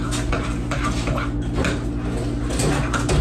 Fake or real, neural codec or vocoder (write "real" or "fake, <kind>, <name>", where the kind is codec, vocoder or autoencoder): real